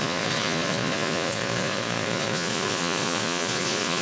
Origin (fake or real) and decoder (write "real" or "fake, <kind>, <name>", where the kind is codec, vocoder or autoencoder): fake, vocoder, Vocos